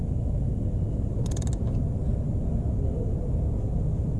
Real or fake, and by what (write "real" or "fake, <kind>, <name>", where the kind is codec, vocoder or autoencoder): real